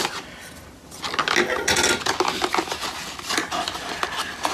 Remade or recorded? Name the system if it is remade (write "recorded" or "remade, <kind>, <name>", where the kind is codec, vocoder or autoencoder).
recorded